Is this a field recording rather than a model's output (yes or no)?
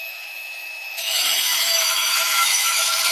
no